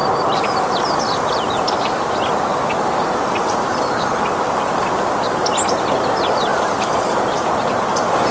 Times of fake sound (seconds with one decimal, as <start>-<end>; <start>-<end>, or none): 0.0-1.0; 6.5-7.2